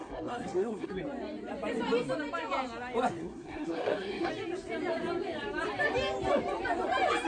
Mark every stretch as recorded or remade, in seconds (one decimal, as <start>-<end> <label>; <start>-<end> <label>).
0.0-0.9 remade; 0.9-3.2 recorded; 3.2-4.3 remade; 4.3-7.3 recorded